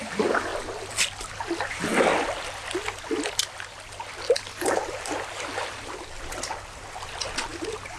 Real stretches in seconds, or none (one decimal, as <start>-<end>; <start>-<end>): 0.5-1.7; 2.1-4.9

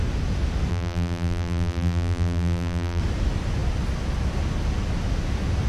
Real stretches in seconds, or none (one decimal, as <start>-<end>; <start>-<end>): 0.0-0.7; 3.0-5.7

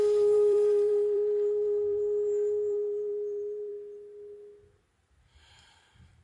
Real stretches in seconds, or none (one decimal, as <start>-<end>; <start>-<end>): 3.7-6.2

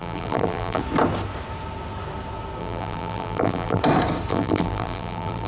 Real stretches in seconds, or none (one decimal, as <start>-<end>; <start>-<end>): 0.8-2.6; 3.8-4.3

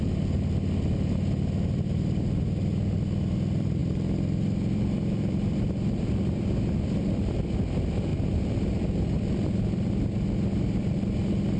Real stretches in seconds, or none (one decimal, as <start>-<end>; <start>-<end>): 0.0-3.8; 7.3-8.1; 9.9-11.6

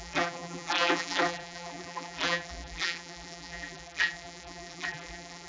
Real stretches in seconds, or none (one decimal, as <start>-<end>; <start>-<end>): none

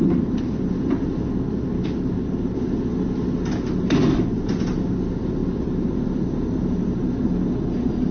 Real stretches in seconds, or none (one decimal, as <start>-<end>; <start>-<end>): 0.0-5.4; 6.6-8.1

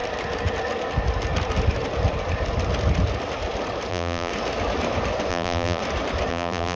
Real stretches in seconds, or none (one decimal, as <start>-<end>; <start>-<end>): 0.0-3.9; 4.3-5.3; 5.8-6.3